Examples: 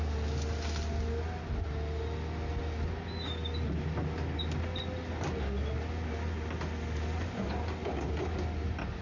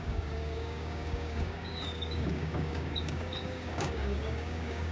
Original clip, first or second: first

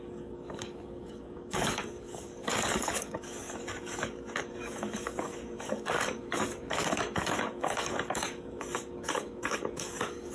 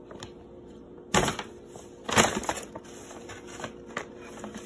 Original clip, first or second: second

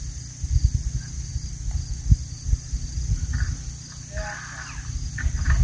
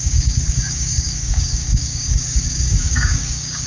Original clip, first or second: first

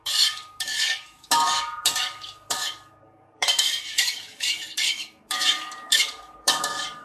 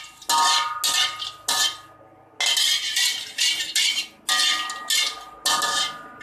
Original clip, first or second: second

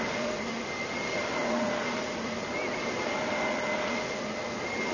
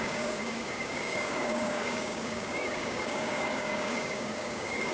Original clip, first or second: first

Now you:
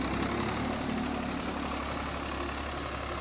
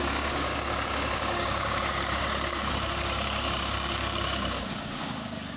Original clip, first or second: first